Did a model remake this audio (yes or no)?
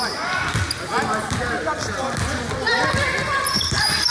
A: no